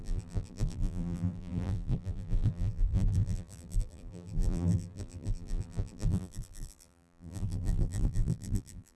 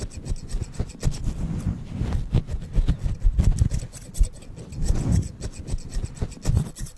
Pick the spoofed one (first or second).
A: first